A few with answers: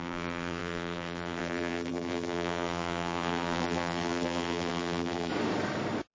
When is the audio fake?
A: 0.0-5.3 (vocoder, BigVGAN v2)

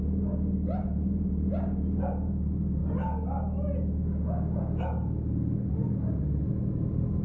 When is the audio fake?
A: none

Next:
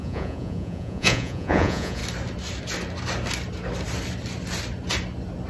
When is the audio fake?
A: 0.0-2.0 (vocoder, Vocos)

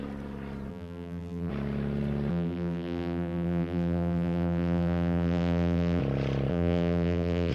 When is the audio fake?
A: 0.7-1.5 (vocoder, BigVGAN v2); 2.3-6.0; 6.5-7.5

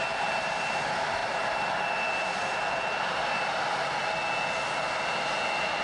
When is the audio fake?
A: none

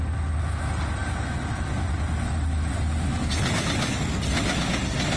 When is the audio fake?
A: none

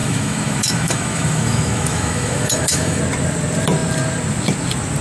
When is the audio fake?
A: 0.0-3.0 (autoencoder, DAC-VAE)

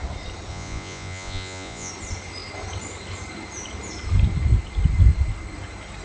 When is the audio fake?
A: 0.5-1.9 (vocoder, Vocos)